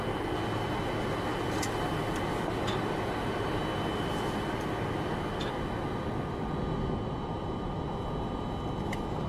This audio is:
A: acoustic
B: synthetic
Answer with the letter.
A